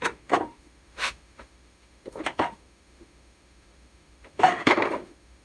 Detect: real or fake fake